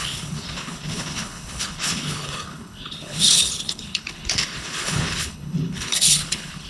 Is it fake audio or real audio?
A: fake